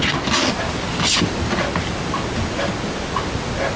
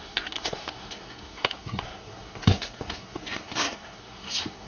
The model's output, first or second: second